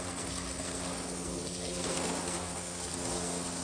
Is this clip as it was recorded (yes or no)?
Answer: no